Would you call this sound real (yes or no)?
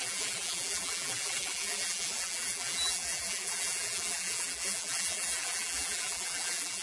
no